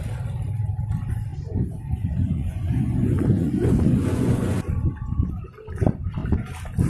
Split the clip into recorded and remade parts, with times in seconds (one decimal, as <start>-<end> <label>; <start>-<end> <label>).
0.0-1.3 recorded; 1.3-5.3 remade; 5.3-6.9 recorded